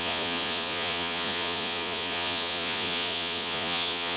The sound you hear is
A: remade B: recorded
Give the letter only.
A